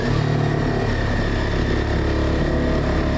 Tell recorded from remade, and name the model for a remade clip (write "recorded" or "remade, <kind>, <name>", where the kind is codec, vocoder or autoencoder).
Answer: recorded